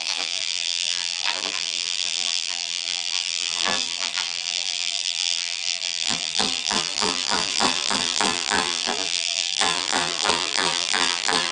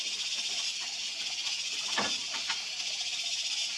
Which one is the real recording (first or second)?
second